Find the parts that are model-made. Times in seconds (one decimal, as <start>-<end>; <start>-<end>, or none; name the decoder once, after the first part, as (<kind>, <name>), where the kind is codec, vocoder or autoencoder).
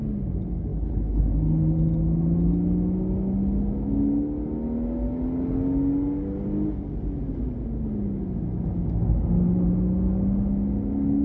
0.7-1.2 (codec, HILCodec)